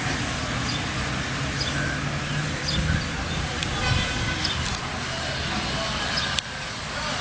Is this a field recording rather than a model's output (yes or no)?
yes